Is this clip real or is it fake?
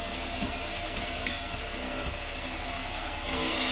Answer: fake